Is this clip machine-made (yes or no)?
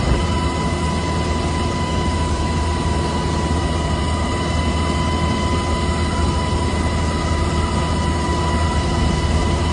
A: no